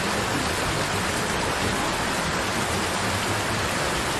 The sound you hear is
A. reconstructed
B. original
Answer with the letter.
B